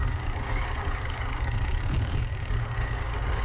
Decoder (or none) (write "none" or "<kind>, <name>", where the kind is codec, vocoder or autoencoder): codec, DAC